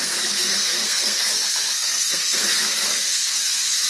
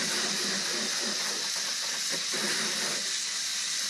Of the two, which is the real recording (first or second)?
second